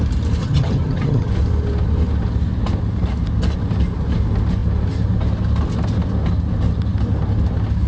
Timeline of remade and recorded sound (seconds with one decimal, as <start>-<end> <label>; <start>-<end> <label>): 0.0-0.4 recorded; 0.4-1.3 remade; 1.3-7.9 recorded